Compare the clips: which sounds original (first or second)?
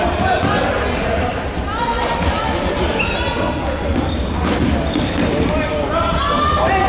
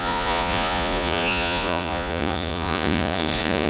first